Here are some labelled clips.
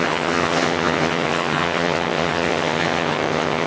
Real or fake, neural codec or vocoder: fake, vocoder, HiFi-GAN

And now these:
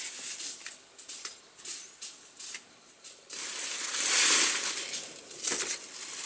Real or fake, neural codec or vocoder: real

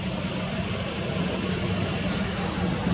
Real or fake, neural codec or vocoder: real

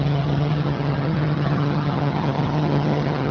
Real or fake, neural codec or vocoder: fake, vocoder, HiFi-GAN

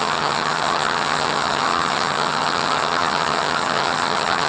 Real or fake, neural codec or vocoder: fake, vocoder, HiFi-GAN